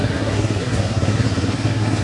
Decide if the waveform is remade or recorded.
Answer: remade